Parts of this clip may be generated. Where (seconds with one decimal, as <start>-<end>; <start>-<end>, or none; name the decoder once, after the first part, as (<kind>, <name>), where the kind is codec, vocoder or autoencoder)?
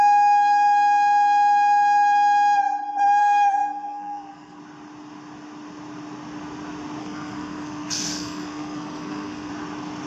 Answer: 3.2-4.6 (codec, SNAC); 7.0-9.5